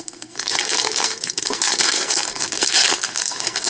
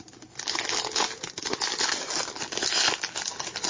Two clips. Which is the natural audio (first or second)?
second